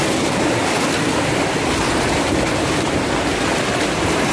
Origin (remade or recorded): recorded